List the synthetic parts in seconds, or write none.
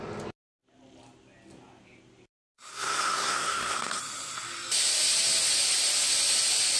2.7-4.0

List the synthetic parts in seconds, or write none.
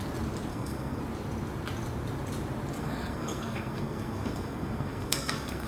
0.5-1.0; 2.8-5.7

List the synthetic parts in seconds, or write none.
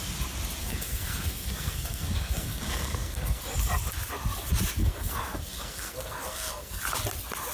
0.6-3.4; 4.8-6.8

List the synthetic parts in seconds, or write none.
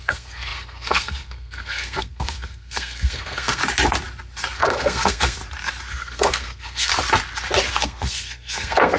0.0-3.6; 4.6-5.4; 5.9-6.9; 7.7-9.0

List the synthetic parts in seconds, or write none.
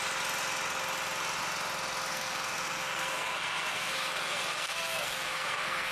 2.1-5.9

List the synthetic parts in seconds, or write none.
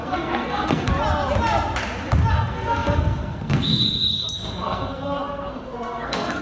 0.0-0.9; 2.3-6.4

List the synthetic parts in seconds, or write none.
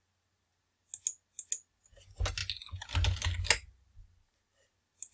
none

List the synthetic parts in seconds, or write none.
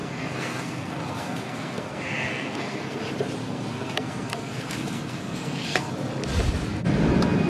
0.0-3.0; 3.4-5.9